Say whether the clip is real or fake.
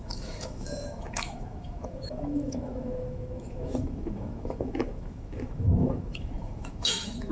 fake